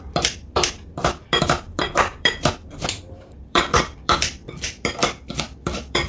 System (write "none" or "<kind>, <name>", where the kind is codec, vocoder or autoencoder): vocoder, BigVGAN v2